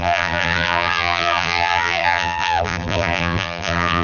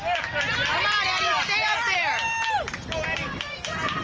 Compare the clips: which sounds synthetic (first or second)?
first